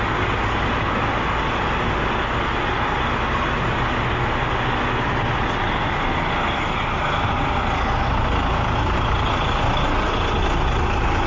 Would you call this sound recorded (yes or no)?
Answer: yes